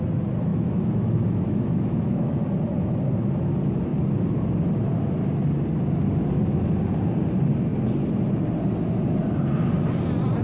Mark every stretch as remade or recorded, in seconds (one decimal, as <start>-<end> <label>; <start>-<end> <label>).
0.0-0.5 recorded; 0.5-2.4 remade; 2.4-10.4 recorded